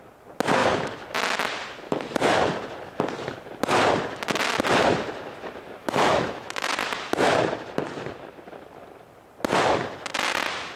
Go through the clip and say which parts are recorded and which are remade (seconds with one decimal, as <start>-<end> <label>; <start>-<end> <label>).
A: 0.0-5.8 recorded; 5.8-6.7 remade; 6.7-10.8 recorded